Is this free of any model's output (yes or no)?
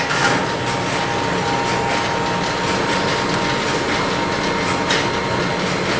yes